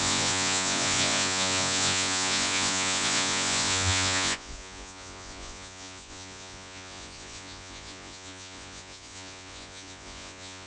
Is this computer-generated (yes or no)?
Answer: yes